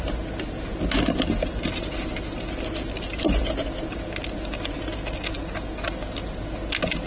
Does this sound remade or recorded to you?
recorded